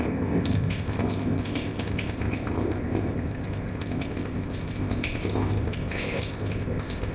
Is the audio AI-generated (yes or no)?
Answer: yes